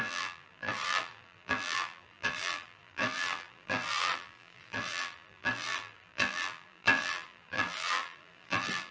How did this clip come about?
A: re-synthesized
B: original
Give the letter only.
A